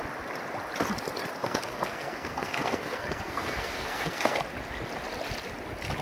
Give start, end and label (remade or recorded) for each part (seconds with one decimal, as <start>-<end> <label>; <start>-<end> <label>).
0.0-1.4 recorded; 1.4-4.4 remade; 4.4-6.0 recorded